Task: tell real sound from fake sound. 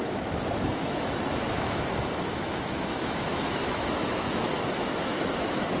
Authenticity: fake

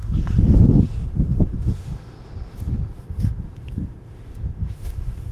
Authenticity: fake